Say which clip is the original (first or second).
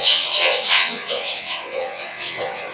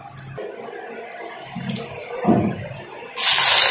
second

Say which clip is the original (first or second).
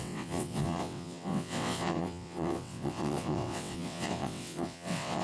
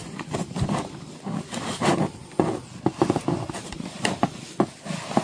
second